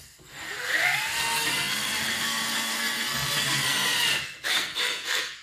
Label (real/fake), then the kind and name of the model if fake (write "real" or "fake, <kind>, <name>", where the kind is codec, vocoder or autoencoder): fake, codec, SNAC